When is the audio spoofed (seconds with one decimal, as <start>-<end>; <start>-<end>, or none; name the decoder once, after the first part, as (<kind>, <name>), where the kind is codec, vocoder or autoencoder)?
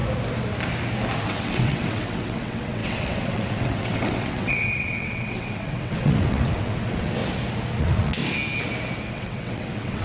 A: 1.2-7.2 (vocoder, WaveNeXt); 7.8-8.2; 9.1-10.0